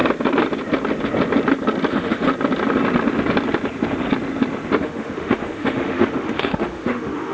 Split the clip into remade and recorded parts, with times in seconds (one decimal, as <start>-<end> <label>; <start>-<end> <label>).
0.0-1.9 recorded; 1.9-2.3 remade; 2.3-4.8 recorded; 4.8-7.3 remade